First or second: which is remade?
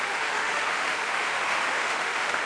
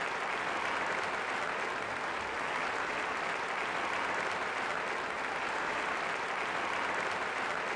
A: first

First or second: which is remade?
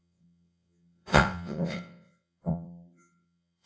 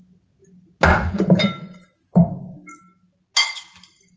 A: first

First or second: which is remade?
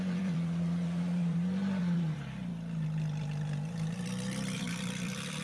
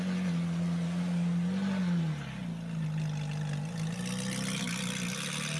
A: first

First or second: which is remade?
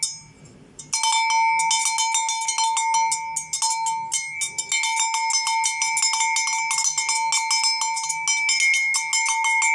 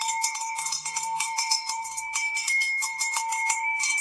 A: second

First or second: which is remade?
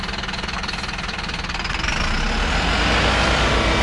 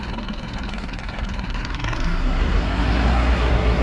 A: second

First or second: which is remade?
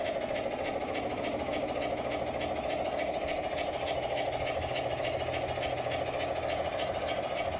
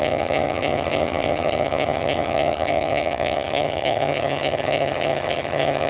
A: second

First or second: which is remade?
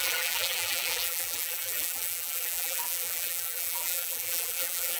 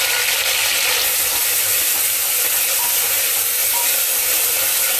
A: first